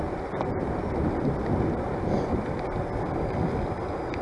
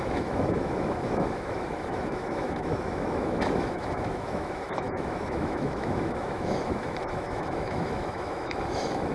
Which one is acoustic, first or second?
first